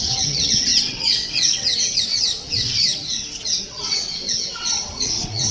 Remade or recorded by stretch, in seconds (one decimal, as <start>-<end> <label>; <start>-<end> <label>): 0.0-5.5 remade

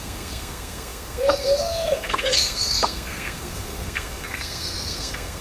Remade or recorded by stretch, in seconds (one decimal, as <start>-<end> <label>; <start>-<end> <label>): 0.0-5.4 remade

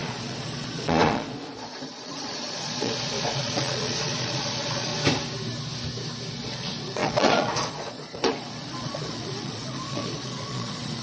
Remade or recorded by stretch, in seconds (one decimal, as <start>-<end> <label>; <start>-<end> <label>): 0.0-4.9 remade; 4.9-6.3 recorded; 6.3-11.0 remade

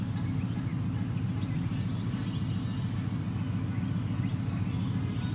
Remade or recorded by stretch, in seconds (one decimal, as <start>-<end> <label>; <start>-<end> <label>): 0.0-5.3 recorded

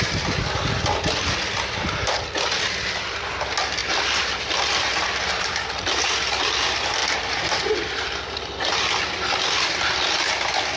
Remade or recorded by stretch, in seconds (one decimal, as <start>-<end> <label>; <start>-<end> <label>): 0.0-10.8 recorded